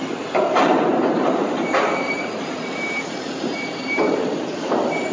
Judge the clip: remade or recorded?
remade